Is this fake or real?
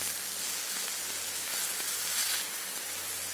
real